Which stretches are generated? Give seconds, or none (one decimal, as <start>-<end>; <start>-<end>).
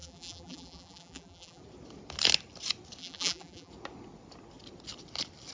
0.0-1.6; 3.0-3.7